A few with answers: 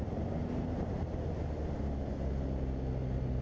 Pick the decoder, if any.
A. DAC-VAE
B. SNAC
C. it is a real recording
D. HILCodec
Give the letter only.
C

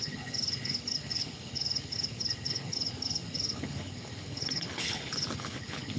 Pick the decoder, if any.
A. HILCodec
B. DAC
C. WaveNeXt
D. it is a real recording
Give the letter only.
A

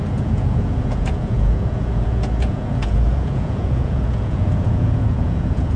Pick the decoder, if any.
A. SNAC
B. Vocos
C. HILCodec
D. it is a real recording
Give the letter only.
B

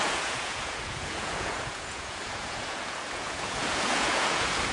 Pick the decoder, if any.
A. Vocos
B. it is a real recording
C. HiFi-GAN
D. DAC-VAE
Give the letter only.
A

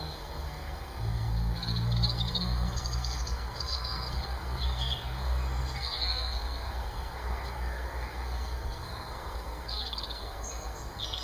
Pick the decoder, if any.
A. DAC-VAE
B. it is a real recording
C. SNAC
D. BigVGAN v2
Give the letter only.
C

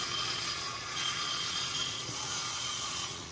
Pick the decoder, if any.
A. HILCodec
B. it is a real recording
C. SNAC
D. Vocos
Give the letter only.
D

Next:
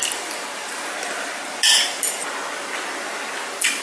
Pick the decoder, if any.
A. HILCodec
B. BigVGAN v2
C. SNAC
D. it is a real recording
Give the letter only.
D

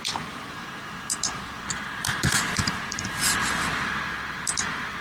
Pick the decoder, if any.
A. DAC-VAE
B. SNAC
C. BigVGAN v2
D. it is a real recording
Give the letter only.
C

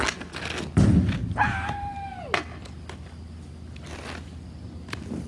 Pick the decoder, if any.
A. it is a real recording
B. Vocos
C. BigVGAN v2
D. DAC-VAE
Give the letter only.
A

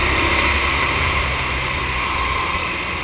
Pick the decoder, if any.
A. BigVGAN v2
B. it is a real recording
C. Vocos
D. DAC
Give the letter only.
B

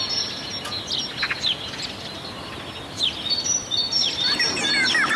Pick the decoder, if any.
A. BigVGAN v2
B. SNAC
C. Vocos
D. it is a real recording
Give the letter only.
D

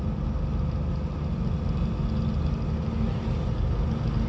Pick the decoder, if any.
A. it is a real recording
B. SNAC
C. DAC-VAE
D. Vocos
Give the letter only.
A